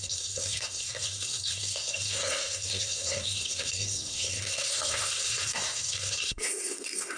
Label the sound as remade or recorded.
remade